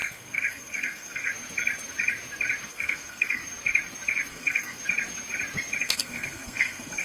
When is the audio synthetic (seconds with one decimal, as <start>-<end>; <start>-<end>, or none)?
0.0-1.3; 2.7-3.4; 4.3-4.8; 5.8-7.0